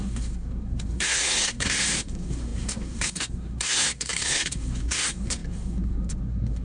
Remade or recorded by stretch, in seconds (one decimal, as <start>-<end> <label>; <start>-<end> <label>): 0.0-6.6 remade